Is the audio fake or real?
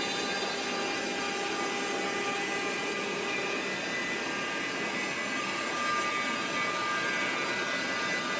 real